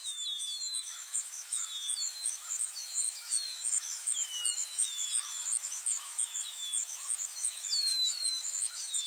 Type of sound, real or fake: fake